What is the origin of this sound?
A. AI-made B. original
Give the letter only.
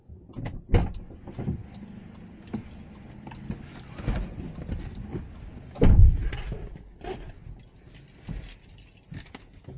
B